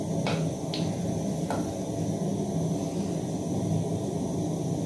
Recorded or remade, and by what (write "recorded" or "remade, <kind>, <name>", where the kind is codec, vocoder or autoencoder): recorded